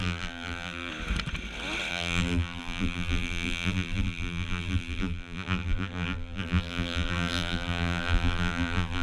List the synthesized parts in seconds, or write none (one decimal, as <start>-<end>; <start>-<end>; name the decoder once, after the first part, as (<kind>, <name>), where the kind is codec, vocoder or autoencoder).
0.0-0.9 (vocoder, BigVGAN v2); 1.9-9.0